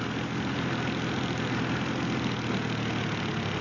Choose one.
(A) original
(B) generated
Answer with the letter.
A